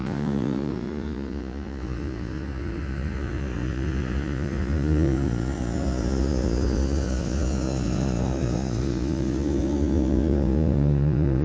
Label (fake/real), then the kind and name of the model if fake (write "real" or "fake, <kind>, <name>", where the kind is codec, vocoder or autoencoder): fake, vocoder, Vocos